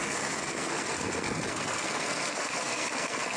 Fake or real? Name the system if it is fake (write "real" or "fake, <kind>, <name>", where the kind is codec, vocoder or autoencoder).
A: fake, codec, SNAC